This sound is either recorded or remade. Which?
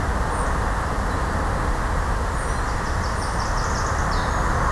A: recorded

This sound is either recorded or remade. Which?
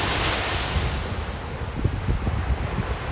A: recorded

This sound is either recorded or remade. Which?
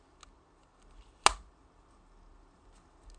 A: recorded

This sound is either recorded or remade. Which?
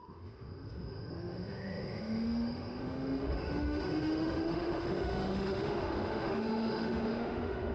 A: remade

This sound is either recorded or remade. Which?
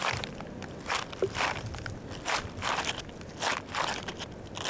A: remade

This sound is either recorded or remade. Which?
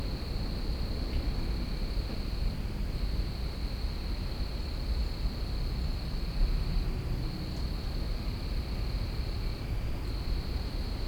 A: recorded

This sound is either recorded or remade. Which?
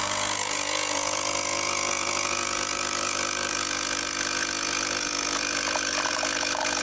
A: remade